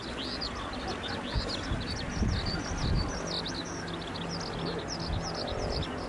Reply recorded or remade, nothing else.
recorded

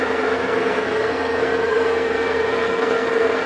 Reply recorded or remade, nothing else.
remade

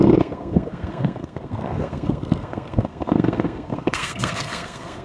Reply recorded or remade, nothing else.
remade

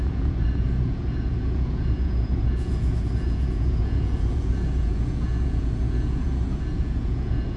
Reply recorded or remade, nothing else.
remade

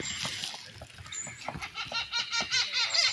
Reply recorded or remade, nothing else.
recorded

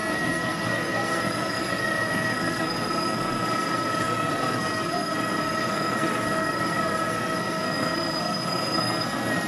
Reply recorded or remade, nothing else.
remade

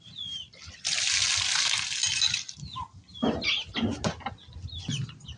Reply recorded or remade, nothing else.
recorded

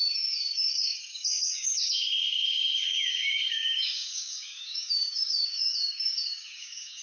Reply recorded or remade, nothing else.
remade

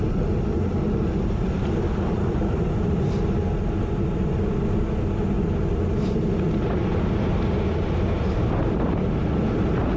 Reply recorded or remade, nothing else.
recorded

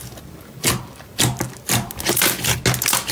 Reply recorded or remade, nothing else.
recorded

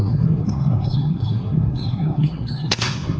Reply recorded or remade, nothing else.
remade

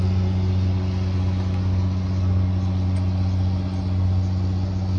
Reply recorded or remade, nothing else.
recorded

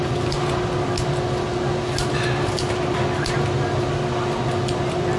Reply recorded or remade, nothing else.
recorded